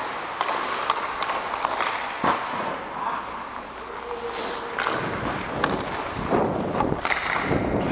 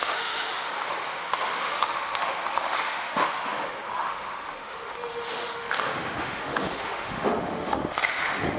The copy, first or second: second